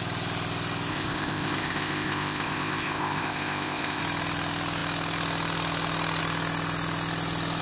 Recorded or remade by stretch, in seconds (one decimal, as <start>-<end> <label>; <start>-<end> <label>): 0.0-0.9 recorded; 0.9-4.0 remade; 4.0-7.6 recorded